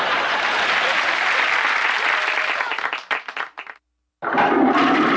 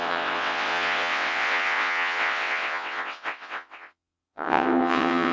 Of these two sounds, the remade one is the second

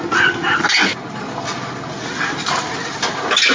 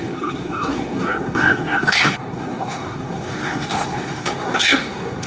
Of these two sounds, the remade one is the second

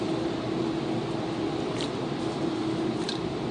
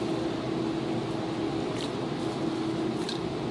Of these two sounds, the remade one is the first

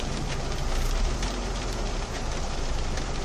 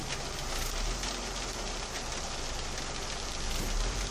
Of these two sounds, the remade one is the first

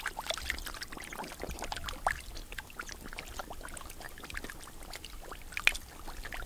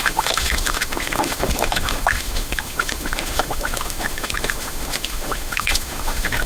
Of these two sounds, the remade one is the second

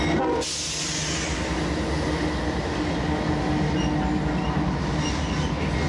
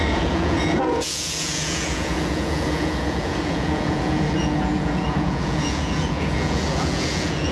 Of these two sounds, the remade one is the second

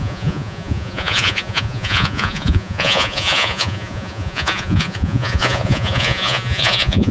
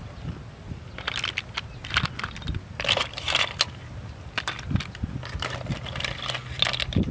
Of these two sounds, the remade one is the first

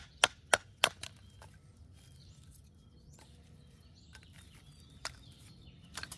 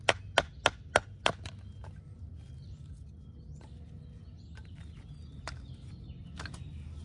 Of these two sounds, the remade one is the first